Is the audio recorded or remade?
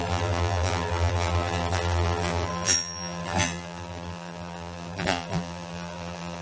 remade